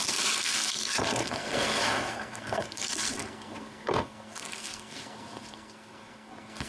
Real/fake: fake